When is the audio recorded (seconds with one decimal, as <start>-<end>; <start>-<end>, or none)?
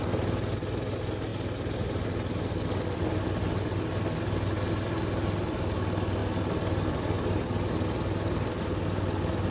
0.0-9.5